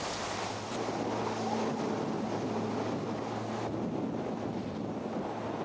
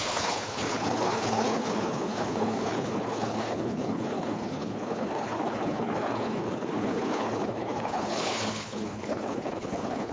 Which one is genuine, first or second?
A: first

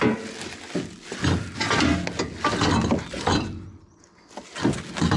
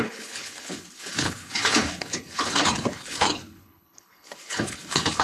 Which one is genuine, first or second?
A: first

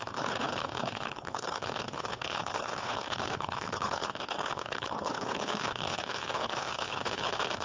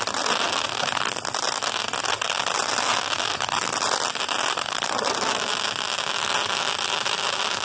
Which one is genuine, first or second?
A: second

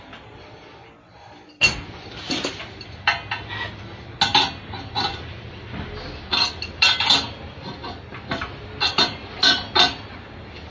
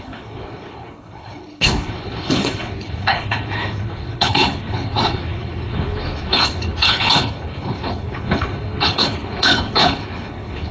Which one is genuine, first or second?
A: first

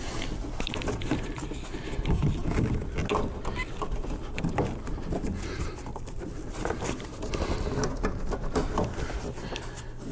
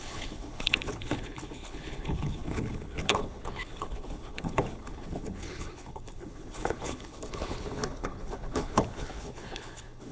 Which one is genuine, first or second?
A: first